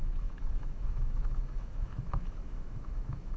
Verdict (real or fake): fake